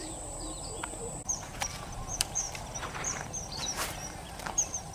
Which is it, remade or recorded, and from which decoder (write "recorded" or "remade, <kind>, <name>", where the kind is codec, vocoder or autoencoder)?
remade, vocoder, BigVGAN v2